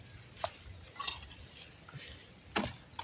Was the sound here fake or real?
real